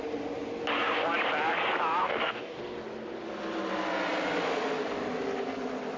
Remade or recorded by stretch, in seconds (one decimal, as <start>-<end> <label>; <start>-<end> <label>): 0.0-2.0 recorded; 2.0-2.6 remade; 2.6-6.0 recorded